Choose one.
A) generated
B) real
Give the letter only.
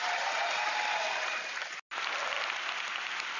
B